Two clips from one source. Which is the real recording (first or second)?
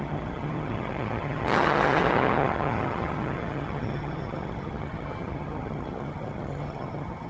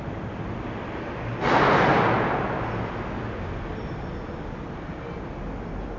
second